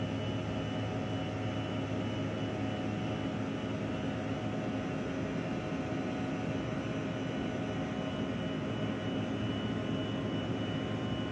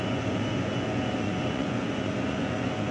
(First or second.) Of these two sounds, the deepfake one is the second